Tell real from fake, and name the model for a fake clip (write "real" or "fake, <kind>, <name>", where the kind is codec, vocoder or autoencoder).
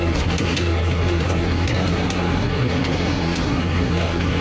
fake, codec, SNAC